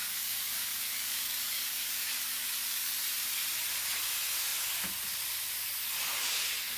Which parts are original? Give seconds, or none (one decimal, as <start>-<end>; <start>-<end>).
2.9-6.8